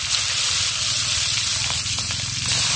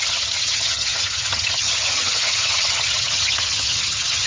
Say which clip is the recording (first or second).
first